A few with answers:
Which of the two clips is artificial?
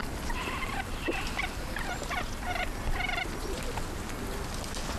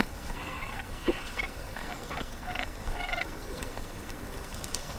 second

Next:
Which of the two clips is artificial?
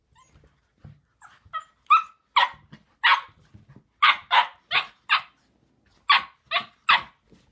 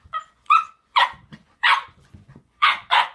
second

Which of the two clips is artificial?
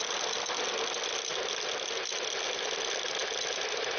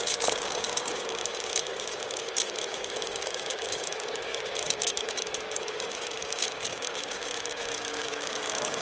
second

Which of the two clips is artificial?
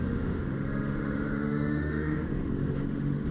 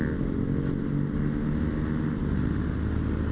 first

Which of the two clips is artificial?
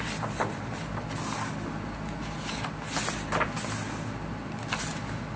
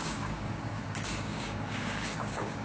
second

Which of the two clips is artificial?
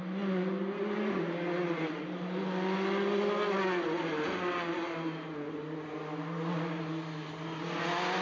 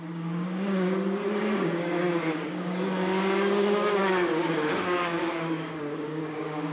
second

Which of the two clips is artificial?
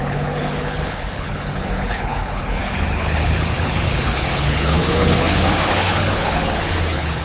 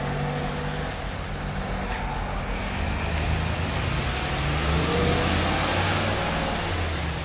first